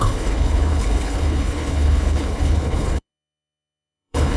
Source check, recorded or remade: remade